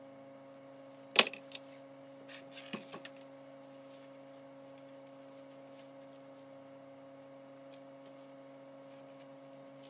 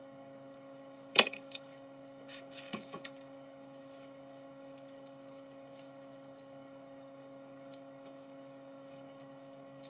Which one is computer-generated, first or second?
second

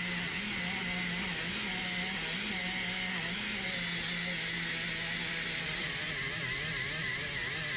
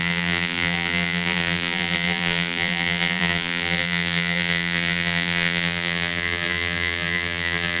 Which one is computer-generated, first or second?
second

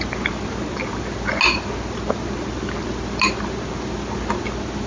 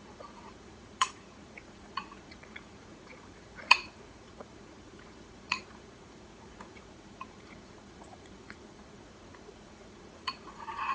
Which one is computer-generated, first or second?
second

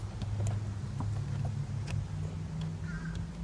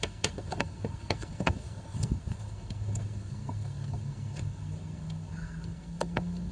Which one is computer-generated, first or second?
second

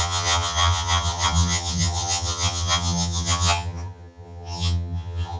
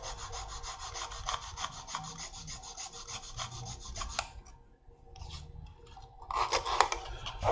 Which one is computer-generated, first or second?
first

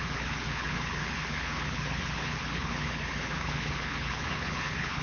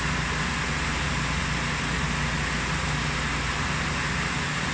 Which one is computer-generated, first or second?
first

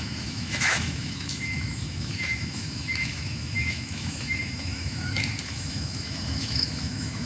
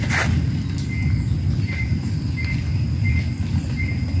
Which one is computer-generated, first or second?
first